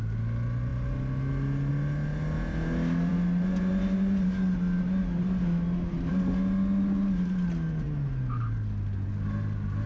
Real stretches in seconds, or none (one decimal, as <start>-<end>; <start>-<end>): 0.0-9.9